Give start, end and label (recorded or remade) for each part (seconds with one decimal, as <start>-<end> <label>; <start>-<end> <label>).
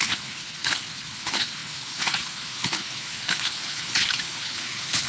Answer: 0.0-5.1 remade